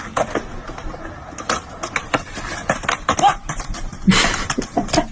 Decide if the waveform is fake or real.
real